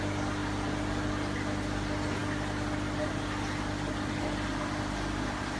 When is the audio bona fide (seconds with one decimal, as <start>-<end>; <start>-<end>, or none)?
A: 0.0-5.6